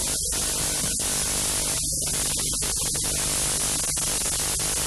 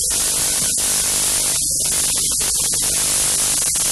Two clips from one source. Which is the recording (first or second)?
first